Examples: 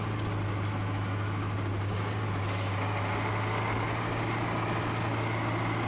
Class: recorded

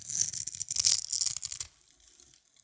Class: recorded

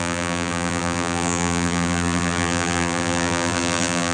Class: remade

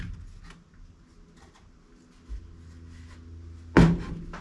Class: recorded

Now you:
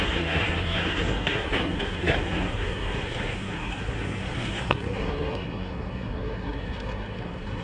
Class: remade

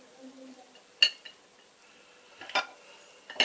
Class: recorded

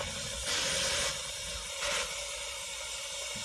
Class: recorded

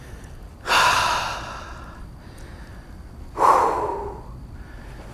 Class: recorded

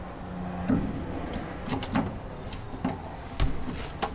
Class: recorded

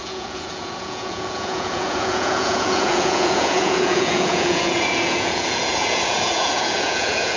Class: remade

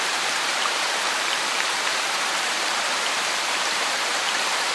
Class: remade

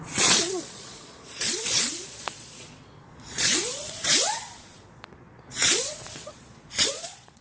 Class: remade